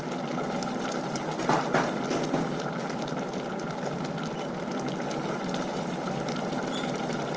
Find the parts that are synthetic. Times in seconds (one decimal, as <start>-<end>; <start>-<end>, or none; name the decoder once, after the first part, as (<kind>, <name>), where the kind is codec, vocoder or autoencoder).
none